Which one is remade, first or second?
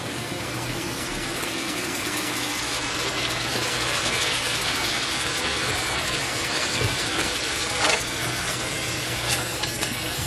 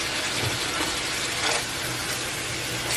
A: first